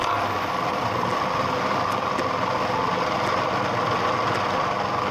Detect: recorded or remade recorded